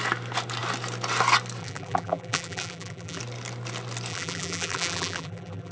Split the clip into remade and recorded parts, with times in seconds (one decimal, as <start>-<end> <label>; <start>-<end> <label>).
0.0-1.6 recorded; 1.6-3.2 remade; 3.2-4.1 recorded; 4.1-5.7 remade